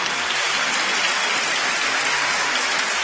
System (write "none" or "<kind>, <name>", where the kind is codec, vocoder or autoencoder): none